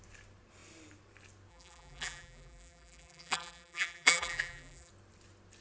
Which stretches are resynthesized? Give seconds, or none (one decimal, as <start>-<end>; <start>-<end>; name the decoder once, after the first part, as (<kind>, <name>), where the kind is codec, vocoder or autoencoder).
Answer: 1.5-4.9 (vocoder, BigVGAN v2)